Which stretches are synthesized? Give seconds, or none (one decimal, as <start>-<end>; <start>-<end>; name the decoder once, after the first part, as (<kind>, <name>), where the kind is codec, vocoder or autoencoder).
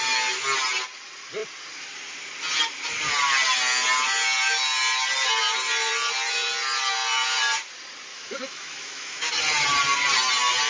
8.1-9.3 (autoencoder, DAC-VAE)